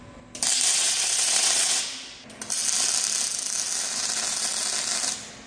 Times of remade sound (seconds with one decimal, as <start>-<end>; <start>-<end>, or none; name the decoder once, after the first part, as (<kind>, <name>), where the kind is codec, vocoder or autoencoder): 0.7-1.8 (vocoder, WaveNeXt)